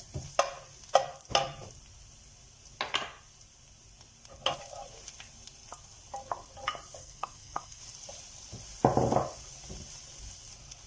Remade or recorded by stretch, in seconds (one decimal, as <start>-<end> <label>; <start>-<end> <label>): 0.0-7.0 recorded; 7.0-7.8 remade; 7.8-10.9 recorded